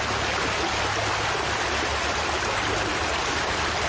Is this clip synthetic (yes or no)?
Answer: no